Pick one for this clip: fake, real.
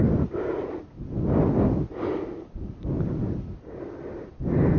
fake